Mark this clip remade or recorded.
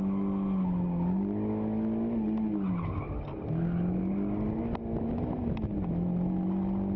recorded